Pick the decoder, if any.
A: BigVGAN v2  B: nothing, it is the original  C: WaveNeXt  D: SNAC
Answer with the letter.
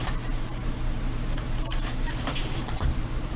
A